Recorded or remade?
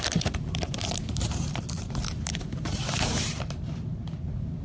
remade